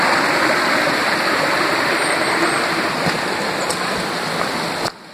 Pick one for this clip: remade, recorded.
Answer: recorded